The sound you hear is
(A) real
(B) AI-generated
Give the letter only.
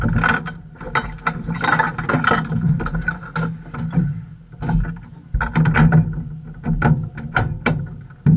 A